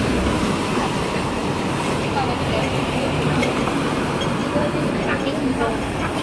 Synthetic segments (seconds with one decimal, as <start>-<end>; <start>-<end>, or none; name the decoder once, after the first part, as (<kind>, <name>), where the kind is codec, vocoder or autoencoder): 0.0-6.2 (vocoder, BigVGAN v2)